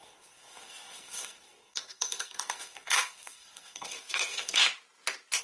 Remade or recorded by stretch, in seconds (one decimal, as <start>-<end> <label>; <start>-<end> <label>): 0.0-4.6 remade; 4.6-5.4 recorded